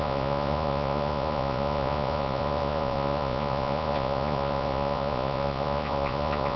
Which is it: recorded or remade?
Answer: remade